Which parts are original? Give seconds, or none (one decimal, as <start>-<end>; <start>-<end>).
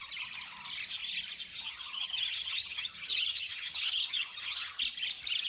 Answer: 0.0-1.5; 4.8-5.5